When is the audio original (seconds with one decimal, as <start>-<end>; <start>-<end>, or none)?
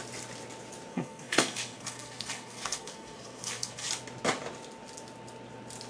0.0-0.9; 3.9-5.9